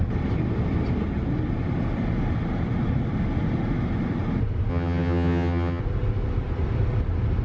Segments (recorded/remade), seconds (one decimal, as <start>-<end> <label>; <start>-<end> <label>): 0.0-4.7 recorded; 4.7-5.8 remade; 5.8-7.4 recorded